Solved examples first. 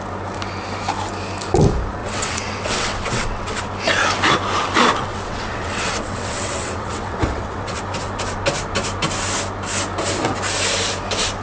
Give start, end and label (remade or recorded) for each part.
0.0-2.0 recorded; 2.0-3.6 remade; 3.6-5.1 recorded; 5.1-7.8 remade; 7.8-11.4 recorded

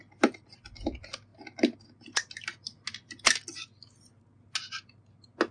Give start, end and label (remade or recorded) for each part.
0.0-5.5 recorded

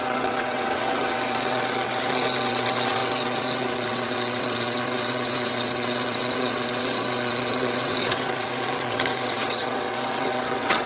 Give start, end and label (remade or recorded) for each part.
0.0-10.9 remade

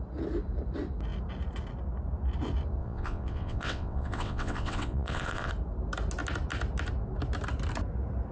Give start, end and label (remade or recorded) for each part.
0.0-2.8 recorded; 2.8-5.5 remade; 5.5-8.3 recorded

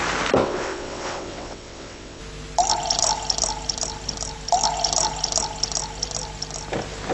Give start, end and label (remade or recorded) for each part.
0.0-0.4 recorded; 0.4-2.2 remade; 2.2-7.1 recorded

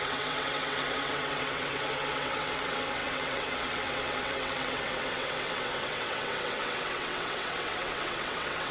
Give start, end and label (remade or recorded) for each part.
0.0-8.7 remade